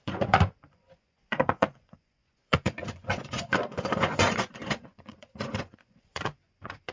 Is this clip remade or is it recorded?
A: remade